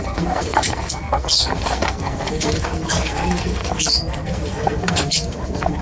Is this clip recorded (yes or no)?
no